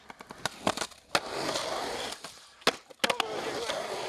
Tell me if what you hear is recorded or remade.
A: recorded